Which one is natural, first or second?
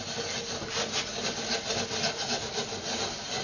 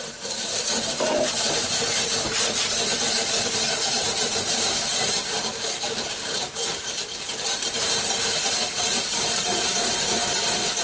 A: first